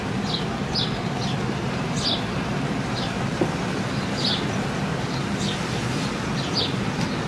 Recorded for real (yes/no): yes